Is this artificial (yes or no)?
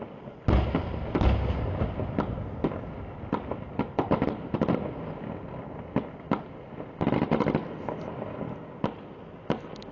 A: no